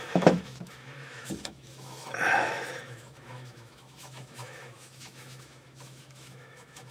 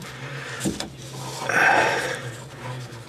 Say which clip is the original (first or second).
second